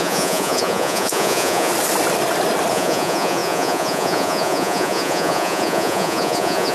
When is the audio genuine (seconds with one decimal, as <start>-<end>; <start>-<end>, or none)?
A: 1.7-2.7